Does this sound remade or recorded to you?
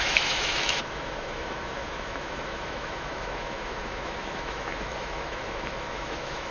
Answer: remade